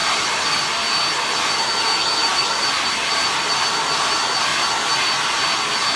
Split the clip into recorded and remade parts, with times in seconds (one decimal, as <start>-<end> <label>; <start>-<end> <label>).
0.0-0.6 remade; 0.6-2.3 recorded; 2.3-3.1 remade; 3.1-6.0 recorded